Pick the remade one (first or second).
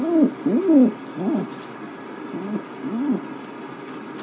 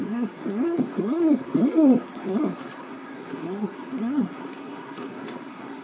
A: second